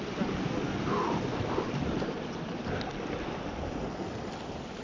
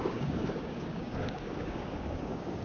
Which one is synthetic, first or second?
second